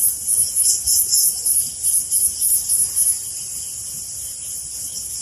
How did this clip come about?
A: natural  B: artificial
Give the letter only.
A